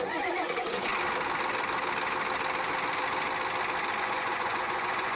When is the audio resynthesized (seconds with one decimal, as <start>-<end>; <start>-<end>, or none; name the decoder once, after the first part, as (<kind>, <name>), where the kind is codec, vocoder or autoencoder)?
0.0-0.9 (vocoder, Vocos); 4.0-5.2